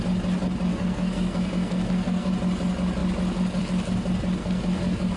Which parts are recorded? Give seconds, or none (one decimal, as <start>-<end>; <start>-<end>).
0.0-0.7; 2.3-4.4